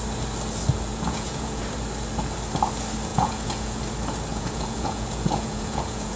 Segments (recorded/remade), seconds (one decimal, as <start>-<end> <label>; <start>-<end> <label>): 0.0-0.9 recorded; 0.9-1.6 remade; 1.6-3.1 recorded; 3.1-3.8 remade; 3.8-4.3 recorded; 4.3-6.2 remade